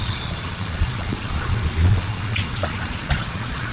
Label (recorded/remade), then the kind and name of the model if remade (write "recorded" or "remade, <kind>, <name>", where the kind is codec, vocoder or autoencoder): remade, vocoder, Vocos